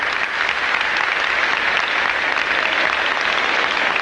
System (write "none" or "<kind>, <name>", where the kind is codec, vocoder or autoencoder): none